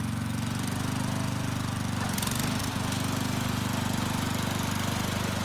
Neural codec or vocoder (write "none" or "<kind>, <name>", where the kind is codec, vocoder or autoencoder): none